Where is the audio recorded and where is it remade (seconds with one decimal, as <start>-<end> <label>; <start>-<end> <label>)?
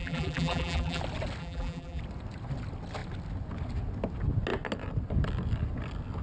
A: 0.0-1.0 remade; 1.0-1.4 recorded; 1.4-2.0 remade; 2.0-6.2 recorded